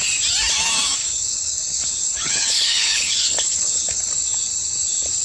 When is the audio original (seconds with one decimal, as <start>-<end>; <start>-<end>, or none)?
0.0-1.0; 4.1-5.2